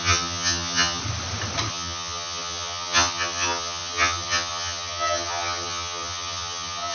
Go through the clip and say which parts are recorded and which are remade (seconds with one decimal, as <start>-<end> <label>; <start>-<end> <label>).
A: 0.0-1.0 remade; 1.0-1.7 recorded; 1.7-6.9 remade